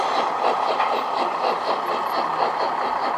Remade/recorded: recorded